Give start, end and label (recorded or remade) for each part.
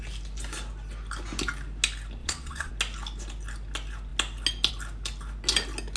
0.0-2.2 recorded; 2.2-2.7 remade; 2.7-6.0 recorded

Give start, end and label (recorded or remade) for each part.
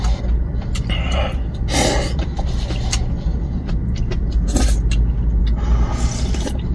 0.0-6.7 recorded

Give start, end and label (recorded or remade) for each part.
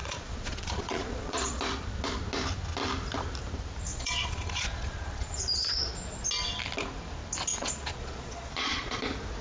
0.0-1.6 remade; 1.6-3.9 recorded; 3.9-5.9 remade; 5.9-7.5 recorded; 7.5-9.0 remade; 9.0-9.4 recorded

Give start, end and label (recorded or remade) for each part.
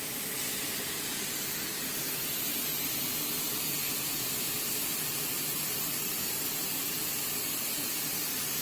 0.0-3.8 recorded; 3.8-4.3 remade; 4.3-8.6 recorded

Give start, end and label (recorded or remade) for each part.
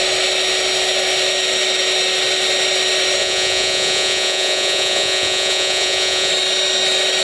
0.0-3.2 recorded; 3.2-6.3 remade; 6.3-7.2 recorded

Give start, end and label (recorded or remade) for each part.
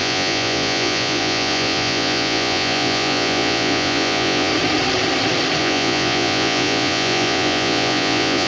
0.0-4.5 remade; 4.5-5.6 recorded; 5.6-8.5 remade